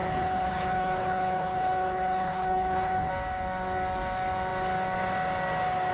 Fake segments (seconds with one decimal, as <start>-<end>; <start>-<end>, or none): 0.0-3.1